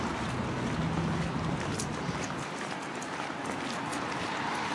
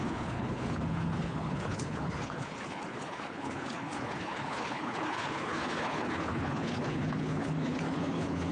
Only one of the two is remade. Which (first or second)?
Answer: second